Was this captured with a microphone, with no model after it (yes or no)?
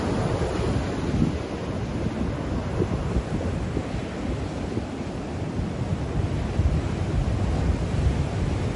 yes